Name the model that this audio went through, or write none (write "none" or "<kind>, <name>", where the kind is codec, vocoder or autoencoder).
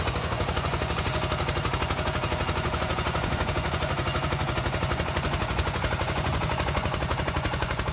vocoder, Vocos